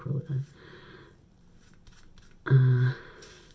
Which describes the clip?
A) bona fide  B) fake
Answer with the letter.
A